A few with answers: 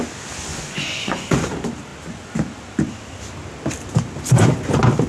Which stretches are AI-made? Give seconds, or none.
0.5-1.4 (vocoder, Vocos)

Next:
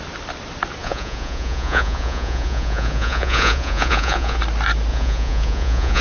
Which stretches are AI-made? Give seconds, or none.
0.8-4.4 (vocoder, Vocos); 4.9-6.0